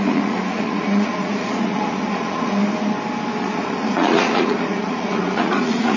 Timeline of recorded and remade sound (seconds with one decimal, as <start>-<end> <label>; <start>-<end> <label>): 0.0-2.6 remade; 2.6-3.4 recorded; 3.4-6.0 remade